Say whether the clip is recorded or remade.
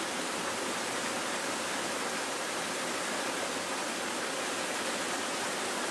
recorded